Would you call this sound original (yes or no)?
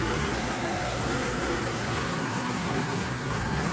no